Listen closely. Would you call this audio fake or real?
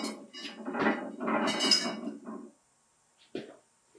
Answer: real